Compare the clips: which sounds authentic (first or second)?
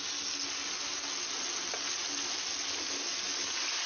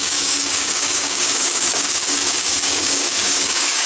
first